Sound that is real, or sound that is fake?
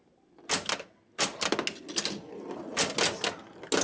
real